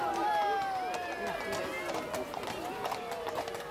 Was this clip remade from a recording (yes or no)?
no